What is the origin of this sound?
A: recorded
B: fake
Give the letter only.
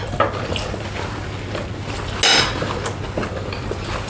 A